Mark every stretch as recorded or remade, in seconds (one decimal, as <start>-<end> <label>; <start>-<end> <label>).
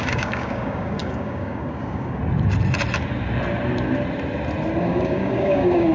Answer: 0.0-2.2 remade; 2.2-4.8 recorded; 4.8-5.9 remade